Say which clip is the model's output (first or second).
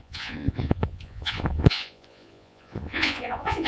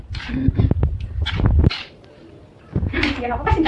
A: first